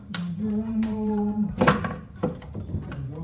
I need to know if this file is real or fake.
fake